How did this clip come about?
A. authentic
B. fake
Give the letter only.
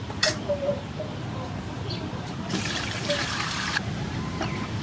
B